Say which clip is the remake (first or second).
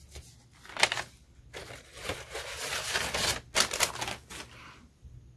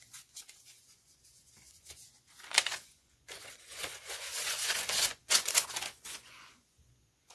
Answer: second